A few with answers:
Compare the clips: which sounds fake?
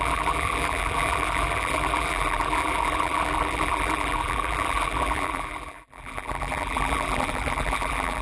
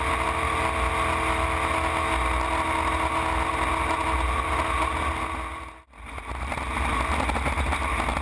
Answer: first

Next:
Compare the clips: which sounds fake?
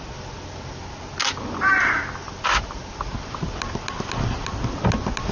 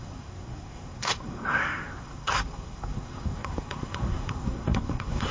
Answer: second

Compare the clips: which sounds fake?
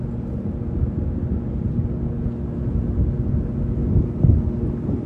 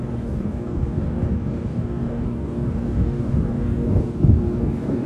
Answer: second